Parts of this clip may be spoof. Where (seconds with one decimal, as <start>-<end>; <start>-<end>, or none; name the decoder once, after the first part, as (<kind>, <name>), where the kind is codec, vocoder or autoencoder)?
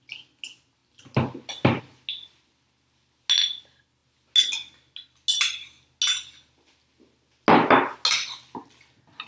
none